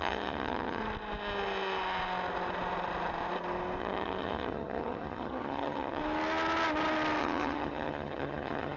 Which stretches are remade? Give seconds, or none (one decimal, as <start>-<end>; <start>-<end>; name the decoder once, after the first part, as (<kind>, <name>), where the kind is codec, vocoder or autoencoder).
0.0-0.8 (vocoder, HiFi-GAN); 3.8-6.0; 7.2-8.8